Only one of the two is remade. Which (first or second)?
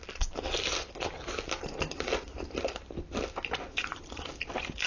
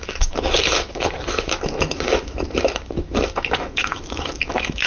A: second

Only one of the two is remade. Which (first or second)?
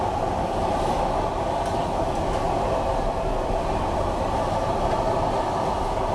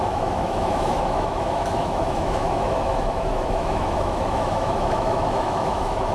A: second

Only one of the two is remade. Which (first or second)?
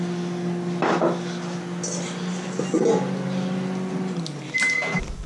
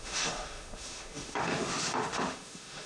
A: second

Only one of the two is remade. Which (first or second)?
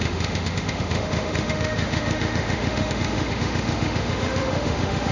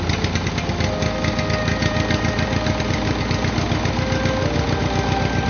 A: first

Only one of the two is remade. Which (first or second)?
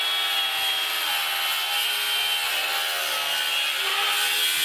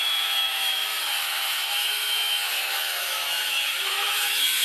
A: second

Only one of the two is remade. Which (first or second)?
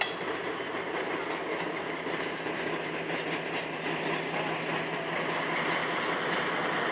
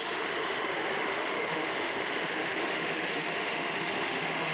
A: second